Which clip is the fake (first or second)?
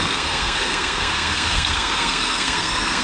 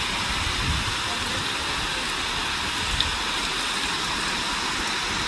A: first